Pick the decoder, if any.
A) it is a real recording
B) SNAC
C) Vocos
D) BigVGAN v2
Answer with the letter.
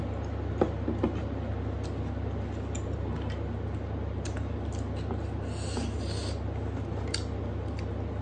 A